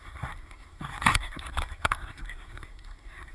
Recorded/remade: remade